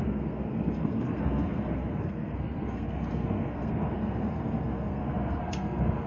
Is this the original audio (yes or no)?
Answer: no